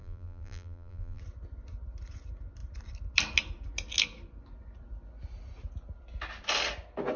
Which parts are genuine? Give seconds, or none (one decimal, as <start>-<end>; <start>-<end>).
1.2-7.2